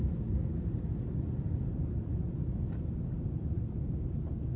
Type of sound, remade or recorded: recorded